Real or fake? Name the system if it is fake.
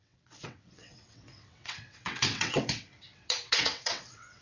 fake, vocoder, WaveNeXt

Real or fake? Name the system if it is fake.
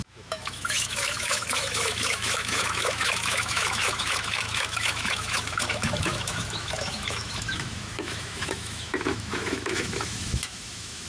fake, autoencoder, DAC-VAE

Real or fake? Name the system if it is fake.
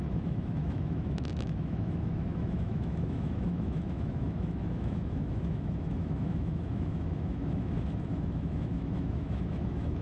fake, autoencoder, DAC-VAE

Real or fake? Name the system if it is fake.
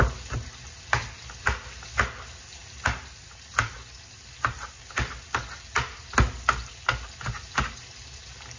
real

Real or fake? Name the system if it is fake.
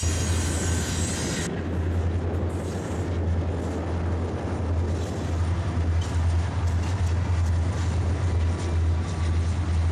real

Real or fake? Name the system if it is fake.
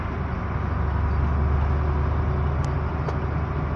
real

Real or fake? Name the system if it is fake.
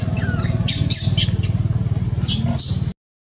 real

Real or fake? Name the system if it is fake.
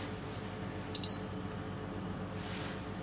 real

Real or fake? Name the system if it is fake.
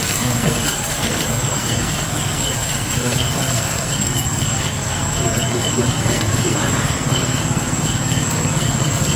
fake, codec, SNAC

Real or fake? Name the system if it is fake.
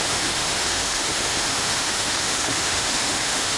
fake, autoencoder, DAC-VAE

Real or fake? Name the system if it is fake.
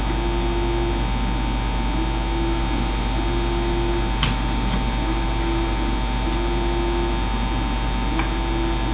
real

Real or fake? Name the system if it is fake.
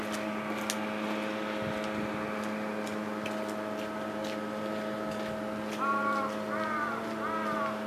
real